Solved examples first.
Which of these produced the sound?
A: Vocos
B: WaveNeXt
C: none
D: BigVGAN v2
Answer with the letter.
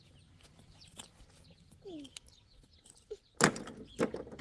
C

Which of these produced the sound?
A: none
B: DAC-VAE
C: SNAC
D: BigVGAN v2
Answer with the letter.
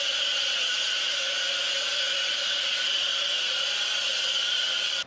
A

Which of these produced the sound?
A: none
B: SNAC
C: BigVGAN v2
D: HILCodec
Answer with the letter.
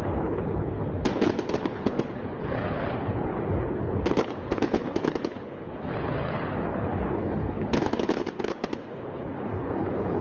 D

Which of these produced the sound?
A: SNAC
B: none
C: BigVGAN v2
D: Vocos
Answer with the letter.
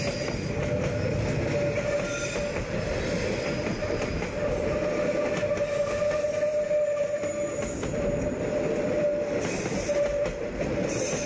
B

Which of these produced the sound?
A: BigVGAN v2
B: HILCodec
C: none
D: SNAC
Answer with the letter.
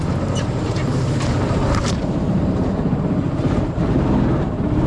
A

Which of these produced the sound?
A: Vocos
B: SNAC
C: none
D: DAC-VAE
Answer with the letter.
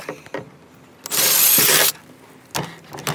C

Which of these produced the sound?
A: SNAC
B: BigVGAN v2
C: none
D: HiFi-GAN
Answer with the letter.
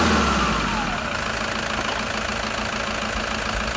C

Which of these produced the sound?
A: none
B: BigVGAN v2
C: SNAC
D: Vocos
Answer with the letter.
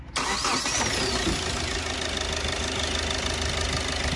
A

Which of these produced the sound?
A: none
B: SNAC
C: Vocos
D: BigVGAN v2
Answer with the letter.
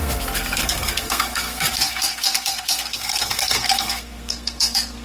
B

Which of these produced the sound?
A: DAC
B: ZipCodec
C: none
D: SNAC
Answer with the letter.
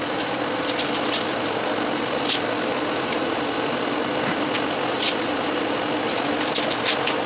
C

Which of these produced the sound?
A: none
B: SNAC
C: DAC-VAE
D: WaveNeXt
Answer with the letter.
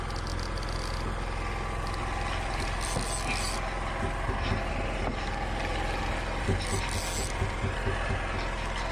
A